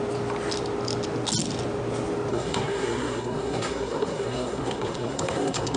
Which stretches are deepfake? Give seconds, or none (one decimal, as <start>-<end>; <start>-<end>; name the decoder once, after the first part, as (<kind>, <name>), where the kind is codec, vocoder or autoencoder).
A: 2.3-5.8 (codec, SNAC)